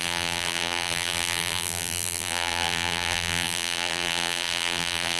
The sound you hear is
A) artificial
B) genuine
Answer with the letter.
A